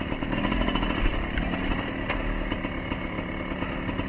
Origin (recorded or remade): recorded